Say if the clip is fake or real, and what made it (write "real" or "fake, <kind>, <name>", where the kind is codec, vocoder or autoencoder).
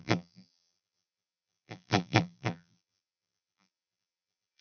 fake, vocoder, BigVGAN v2